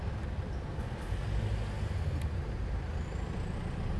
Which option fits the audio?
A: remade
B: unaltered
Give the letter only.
B